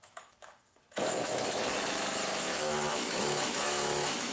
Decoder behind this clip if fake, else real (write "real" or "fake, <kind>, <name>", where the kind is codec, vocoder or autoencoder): fake, autoencoder, DAC-VAE